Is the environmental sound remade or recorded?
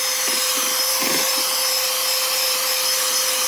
recorded